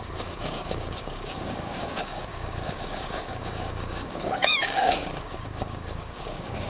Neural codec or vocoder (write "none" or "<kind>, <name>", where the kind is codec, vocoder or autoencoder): codec, DAC